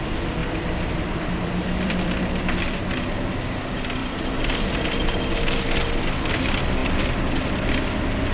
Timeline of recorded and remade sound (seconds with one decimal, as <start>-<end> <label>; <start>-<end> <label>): 0.0-0.4 recorded; 0.4-2.8 remade; 2.8-4.0 recorded; 4.0-4.8 remade; 4.8-6.8 recorded; 6.8-7.7 remade; 7.7-8.3 recorded